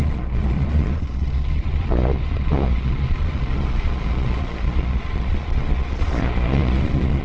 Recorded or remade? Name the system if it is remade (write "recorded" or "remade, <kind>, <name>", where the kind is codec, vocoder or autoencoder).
remade, vocoder, Vocos